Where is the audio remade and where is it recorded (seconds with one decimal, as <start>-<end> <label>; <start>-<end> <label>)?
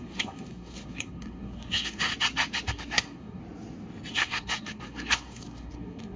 0.0-2.1 remade; 2.1-2.7 recorded; 2.7-3.4 remade; 3.4-4.1 recorded; 4.1-6.2 remade